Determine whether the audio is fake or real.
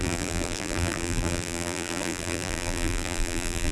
fake